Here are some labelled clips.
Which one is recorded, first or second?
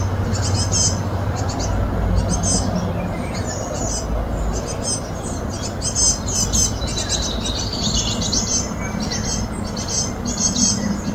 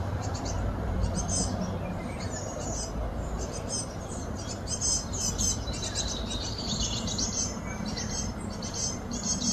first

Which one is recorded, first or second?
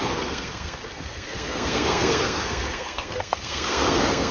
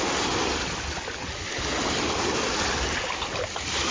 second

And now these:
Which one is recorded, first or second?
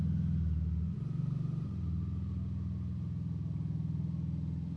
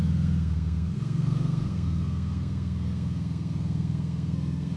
first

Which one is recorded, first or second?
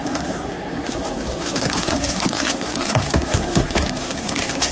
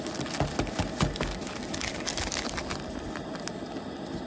second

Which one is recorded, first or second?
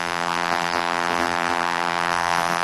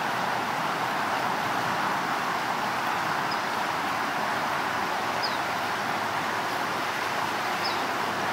second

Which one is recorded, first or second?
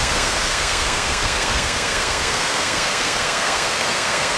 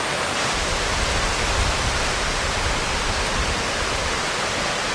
second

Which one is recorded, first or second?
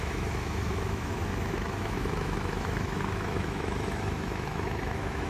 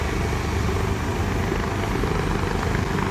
second